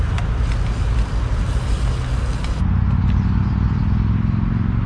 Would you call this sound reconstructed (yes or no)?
no